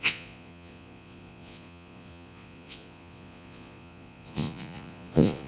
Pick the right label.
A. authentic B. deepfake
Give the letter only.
B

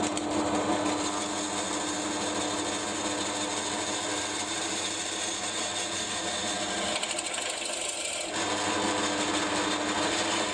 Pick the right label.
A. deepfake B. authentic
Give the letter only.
B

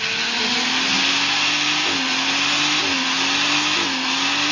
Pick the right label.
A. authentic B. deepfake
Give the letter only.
A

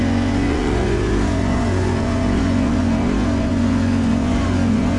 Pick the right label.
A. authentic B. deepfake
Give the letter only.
B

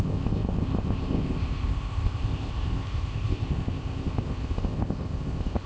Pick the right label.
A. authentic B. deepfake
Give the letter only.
B